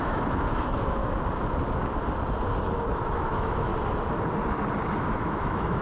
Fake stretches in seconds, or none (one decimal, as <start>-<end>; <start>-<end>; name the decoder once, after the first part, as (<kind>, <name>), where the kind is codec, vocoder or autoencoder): 0.0-1.0 (autoencoder, DAC-VAE); 3.0-3.7; 5.0-5.8

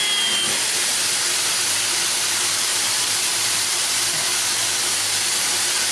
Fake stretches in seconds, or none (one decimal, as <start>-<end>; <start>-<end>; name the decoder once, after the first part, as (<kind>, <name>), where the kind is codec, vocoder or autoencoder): 2.7-3.9 (vocoder, BigVGAN v2)